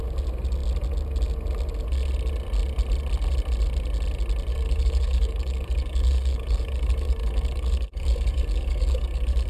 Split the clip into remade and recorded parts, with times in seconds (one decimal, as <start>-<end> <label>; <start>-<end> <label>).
0.0-4.5 recorded; 4.5-9.5 remade